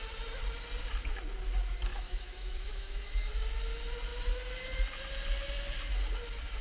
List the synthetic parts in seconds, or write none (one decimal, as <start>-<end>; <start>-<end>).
1.9-3.3